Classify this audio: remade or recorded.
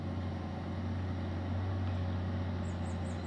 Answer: recorded